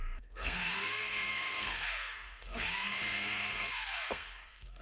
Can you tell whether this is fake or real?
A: fake